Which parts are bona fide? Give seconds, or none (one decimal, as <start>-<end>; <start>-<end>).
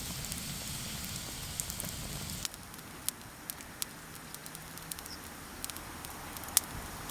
0.0-7.1